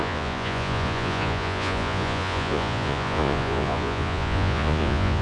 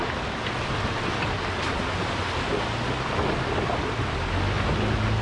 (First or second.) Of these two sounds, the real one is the second